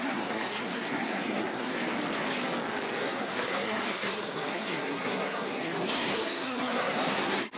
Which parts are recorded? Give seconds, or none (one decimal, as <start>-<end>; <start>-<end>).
1.7-3.0

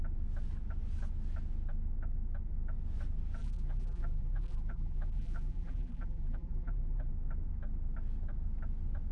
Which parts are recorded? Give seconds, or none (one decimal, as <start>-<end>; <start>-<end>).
0.0-3.4; 7.1-9.1

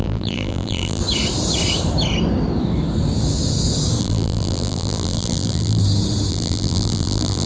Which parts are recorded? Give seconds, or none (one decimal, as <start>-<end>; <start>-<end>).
1.0-4.0; 5.8-6.3